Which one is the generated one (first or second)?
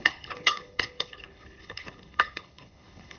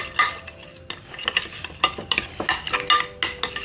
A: first